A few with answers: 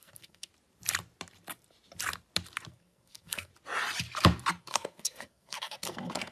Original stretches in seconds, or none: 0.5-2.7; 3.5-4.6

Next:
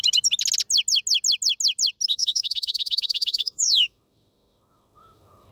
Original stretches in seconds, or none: 0.0-2.1

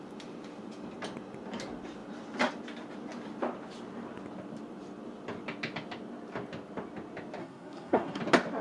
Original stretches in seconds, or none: 0.0-7.4; 8.2-8.6